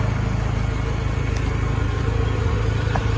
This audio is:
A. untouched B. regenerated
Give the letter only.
A